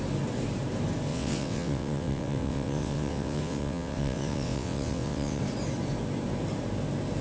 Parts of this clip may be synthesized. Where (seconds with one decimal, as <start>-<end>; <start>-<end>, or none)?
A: 1.1-5.4